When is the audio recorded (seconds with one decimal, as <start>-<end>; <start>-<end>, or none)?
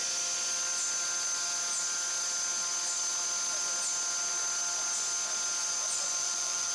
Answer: 0.0-5.6